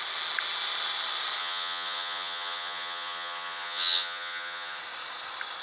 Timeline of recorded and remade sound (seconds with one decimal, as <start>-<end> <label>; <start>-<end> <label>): 0.0-1.4 recorded; 1.4-4.8 remade; 4.8-5.6 recorded